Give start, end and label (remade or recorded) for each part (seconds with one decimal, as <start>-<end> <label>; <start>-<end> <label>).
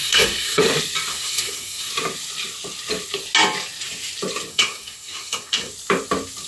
0.0-0.6 remade; 0.6-1.1 recorded; 1.1-1.9 remade; 1.9-4.5 recorded; 4.5-5.7 remade; 5.7-6.5 recorded